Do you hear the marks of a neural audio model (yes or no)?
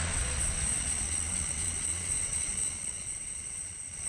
yes